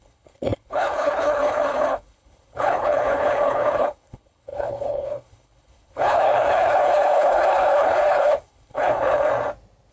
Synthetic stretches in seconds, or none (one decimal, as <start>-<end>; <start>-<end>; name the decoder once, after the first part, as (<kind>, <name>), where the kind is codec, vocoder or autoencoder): 0.0-9.3 (codec, HILCodec)